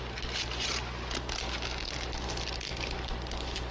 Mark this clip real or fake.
real